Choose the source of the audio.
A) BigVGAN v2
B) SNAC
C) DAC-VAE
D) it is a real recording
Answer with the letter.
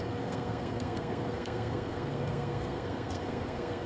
B